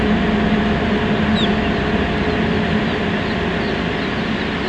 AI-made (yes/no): no